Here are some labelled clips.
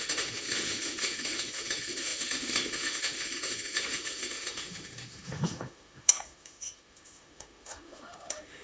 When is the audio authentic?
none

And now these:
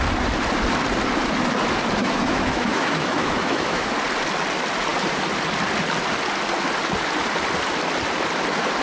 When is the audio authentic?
0.0-2.0; 3.9-8.8

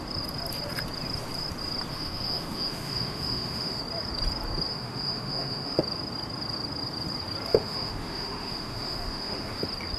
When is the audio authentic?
0.0-1.9; 3.8-4.7; 5.8-7.5; 9.6-10.0

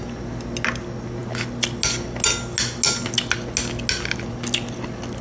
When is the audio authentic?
0.0-5.2

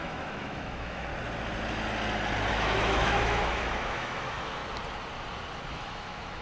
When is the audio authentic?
1.1-2.5; 4.6-5.7

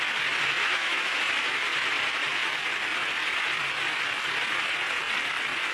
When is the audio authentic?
0.0-0.6; 1.2-5.7

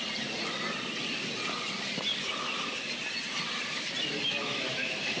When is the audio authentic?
0.0-4.4